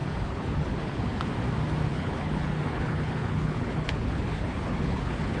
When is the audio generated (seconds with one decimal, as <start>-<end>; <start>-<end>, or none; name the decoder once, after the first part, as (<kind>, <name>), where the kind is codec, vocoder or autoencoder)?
0.0-1.2 (codec, HILCodec); 1.9-5.4